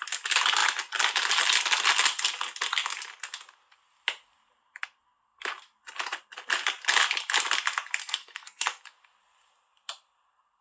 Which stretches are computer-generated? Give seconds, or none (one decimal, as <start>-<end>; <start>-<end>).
8.0-8.8